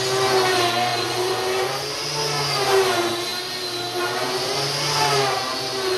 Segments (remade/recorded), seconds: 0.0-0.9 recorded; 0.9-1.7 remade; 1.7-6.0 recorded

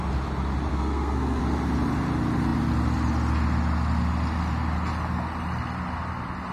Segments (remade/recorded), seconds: 0.0-0.7 recorded; 0.7-1.4 remade; 1.4-6.5 recorded

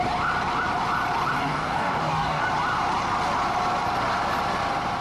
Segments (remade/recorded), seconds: 0.0-1.4 recorded; 1.4-2.4 remade; 2.4-5.0 recorded

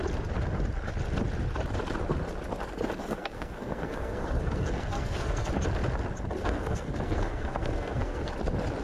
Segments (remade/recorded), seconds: 0.0-3.0 recorded; 3.0-5.5 remade; 5.5-6.4 recorded; 6.4-8.3 remade; 8.3-8.8 recorded